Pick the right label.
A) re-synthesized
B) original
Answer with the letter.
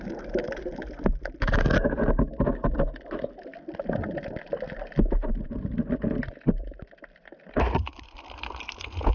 B